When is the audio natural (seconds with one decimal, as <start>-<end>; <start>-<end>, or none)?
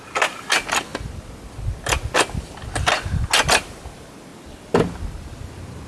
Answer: 0.0-5.9